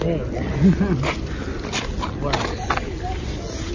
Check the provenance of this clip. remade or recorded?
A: recorded